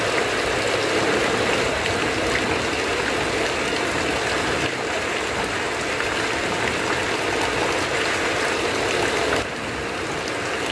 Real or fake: real